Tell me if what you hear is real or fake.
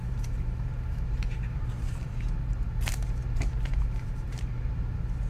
fake